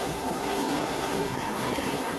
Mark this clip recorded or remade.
remade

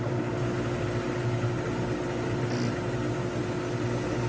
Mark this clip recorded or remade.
recorded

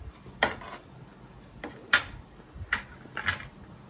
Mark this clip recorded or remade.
recorded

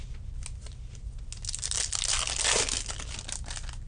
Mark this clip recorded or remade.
recorded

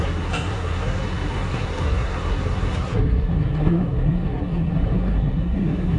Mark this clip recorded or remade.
remade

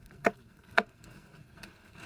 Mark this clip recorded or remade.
remade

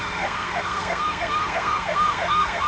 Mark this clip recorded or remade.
remade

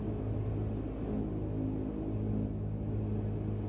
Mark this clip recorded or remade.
recorded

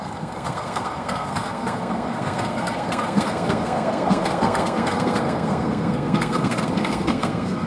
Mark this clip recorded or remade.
remade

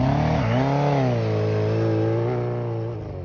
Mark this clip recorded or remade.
recorded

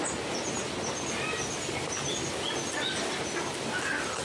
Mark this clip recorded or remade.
recorded